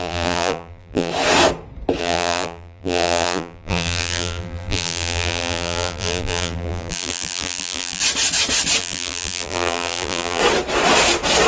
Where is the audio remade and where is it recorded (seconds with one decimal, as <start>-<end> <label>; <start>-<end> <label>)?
0.0-1.1 remade; 1.1-2.0 recorded; 2.0-8.0 remade; 8.0-8.8 recorded; 8.8-10.4 remade; 10.4-11.5 recorded